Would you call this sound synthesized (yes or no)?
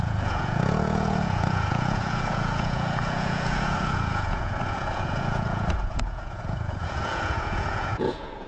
yes